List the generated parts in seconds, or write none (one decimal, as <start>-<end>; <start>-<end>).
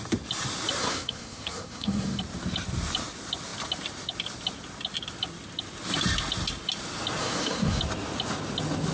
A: 0.8-2.2; 7.2-7.8